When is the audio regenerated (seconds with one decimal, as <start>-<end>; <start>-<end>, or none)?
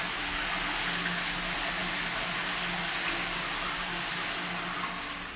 none